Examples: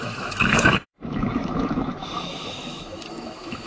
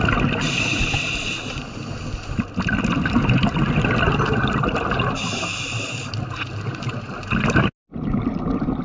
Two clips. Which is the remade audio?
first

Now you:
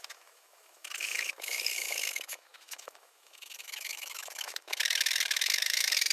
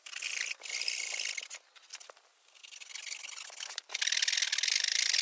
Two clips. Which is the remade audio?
first